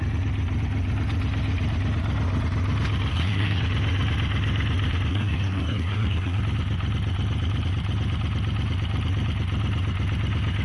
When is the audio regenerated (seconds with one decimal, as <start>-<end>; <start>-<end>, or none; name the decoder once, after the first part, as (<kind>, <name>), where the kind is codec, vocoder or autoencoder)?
3.1-3.6 (codec, SNAC); 5.1-6.4